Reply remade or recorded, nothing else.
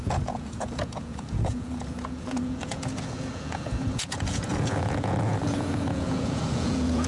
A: remade